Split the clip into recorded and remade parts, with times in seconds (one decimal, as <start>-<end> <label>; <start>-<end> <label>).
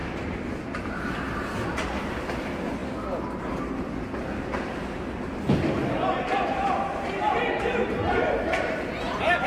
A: 0.0-9.5 recorded